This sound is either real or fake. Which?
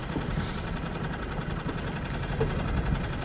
real